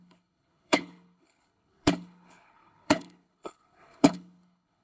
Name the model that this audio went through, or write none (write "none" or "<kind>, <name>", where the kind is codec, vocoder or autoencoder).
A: codec, HILCodec